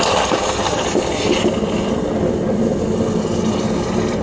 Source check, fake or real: real